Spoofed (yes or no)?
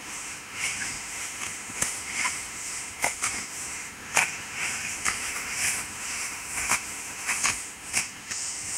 yes